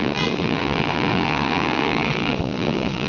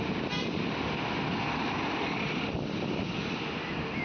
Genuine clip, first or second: second